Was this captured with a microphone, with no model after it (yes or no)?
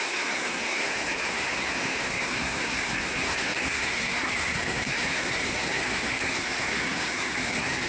no